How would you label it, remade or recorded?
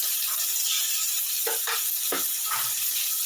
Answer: recorded